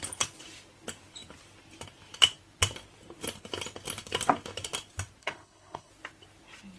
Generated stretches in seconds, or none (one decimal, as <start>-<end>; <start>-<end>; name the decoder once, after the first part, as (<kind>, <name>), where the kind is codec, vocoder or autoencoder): 5.2-5.9 (codec, HILCodec)